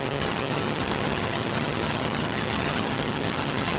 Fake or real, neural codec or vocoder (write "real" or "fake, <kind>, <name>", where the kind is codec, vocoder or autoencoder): fake, vocoder, HiFi-GAN